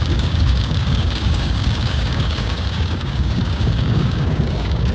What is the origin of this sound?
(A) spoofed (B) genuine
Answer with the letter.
A